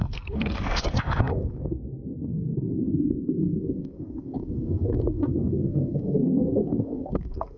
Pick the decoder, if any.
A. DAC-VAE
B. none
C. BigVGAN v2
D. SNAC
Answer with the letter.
D